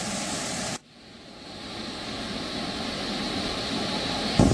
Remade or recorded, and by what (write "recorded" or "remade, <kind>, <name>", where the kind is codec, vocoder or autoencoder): recorded